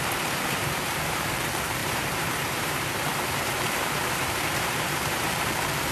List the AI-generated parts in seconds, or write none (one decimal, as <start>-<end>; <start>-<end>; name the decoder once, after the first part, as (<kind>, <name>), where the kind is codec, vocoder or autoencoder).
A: 0.6-1.3 (vocoder, BigVGAN v2); 1.8-5.3